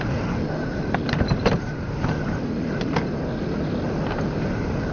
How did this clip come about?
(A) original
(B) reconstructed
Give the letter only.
A